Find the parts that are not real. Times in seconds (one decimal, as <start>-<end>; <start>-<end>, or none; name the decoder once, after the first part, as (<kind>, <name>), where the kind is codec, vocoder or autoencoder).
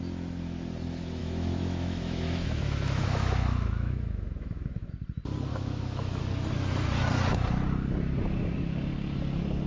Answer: 1.2-4.9 (autoencoder, DAC-VAE); 5.5-6.2